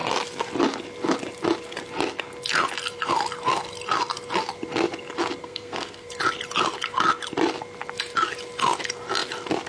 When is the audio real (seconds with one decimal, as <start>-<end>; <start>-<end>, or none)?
0.0-5.4; 6.1-9.7